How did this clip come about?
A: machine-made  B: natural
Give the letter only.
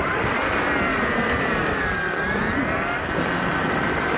B